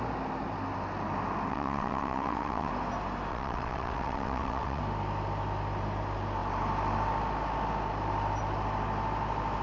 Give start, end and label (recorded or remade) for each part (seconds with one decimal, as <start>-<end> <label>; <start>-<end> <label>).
0.0-1.5 recorded; 1.5-2.7 remade; 2.7-3.3 recorded; 3.3-4.8 remade; 4.8-9.6 recorded